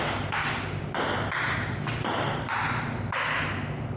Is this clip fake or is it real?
real